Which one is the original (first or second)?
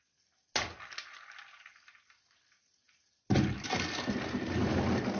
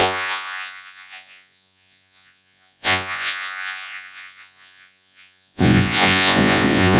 first